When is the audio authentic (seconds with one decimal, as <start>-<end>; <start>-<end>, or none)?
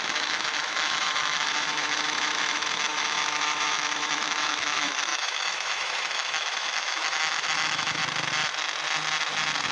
8.0-9.7